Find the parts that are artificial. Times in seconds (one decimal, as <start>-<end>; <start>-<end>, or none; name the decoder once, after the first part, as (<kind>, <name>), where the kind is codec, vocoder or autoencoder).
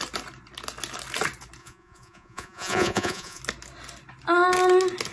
1.6-3.4 (vocoder, Vocos)